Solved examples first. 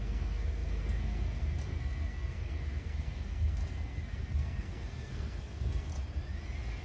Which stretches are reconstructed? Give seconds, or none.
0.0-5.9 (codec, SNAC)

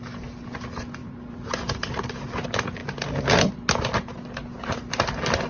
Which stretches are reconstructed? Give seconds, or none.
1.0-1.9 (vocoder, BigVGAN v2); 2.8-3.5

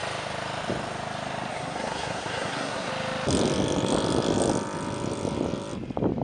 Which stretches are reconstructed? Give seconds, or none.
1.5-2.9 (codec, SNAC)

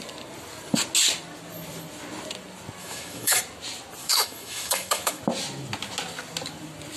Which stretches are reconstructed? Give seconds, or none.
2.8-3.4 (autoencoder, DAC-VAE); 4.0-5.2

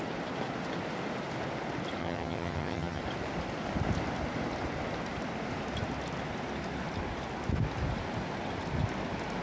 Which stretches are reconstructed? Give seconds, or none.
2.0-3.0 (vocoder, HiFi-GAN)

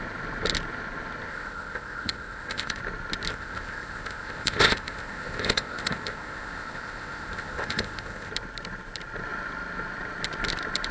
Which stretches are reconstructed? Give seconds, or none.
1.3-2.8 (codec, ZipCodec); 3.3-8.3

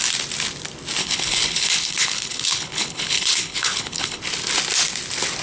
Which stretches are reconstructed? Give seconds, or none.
1.0-4.2 (codec, HILCodec)

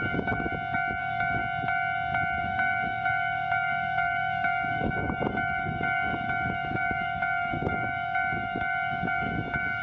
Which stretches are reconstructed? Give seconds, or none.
0.0-0.5 (codec, DAC); 1.0-1.4; 2.4-9.8